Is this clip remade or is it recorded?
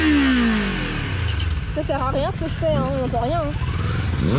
recorded